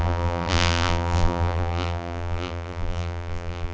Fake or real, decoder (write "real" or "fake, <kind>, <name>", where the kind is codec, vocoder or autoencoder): fake, vocoder, BigVGAN v2